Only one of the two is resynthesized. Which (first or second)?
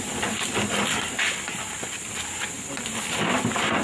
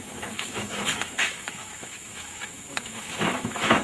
second